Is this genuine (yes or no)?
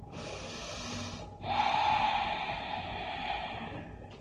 yes